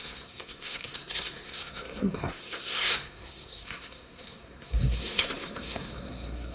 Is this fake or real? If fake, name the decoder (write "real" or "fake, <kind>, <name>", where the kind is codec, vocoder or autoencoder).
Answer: fake, codec, SNAC